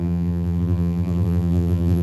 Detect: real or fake fake